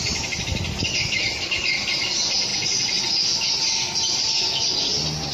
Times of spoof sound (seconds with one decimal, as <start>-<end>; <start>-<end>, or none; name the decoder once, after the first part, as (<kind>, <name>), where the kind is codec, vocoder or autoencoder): none